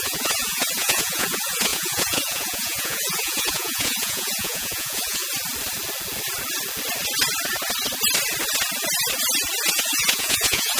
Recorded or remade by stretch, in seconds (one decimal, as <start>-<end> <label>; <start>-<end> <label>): 0.0-5.2 remade; 5.2-9.7 recorded; 9.7-10.8 remade